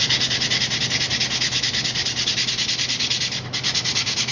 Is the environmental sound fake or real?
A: real